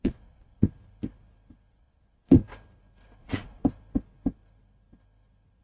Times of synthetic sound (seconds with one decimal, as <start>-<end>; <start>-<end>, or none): 0.0-0.6; 1.7-2.4; 3.2-3.6